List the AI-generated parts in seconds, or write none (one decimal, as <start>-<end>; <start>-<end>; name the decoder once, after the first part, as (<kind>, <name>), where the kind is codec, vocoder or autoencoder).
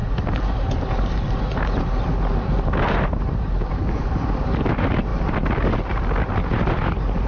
none